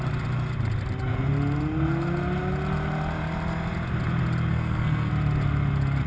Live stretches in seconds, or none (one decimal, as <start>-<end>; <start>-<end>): 0.0-4.5; 5.1-6.1